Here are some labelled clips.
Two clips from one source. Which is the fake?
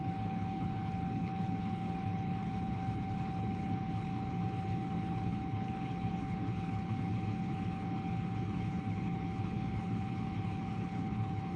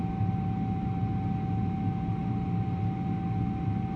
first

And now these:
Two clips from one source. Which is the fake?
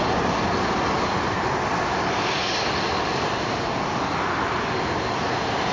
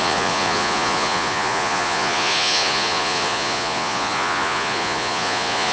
second